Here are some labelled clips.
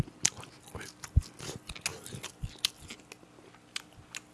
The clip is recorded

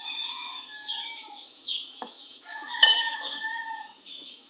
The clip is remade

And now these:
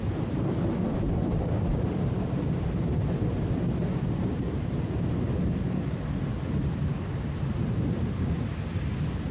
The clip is recorded